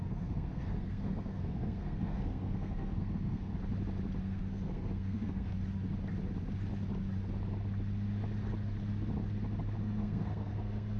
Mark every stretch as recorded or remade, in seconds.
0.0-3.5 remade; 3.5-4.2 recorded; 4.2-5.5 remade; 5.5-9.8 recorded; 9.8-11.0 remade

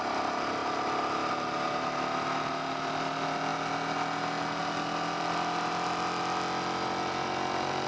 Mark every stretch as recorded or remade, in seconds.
0.0-7.9 recorded

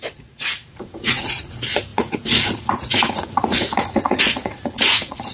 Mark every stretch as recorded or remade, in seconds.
0.0-5.3 remade

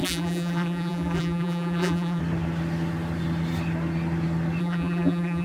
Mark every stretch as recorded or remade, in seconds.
0.0-2.2 remade; 2.2-4.6 recorded; 4.6-5.4 remade

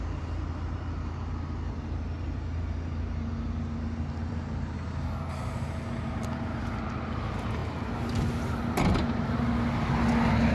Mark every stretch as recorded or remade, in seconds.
0.0-10.5 recorded

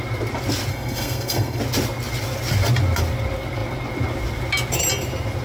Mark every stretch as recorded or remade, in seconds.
0.0-0.7 recorded; 0.7-1.6 remade; 1.6-5.4 recorded